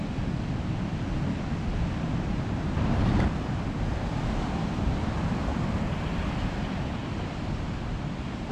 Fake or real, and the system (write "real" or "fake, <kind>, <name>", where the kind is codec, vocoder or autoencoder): real